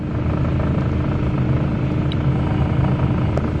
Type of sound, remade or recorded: recorded